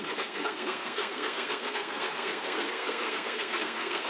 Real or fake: fake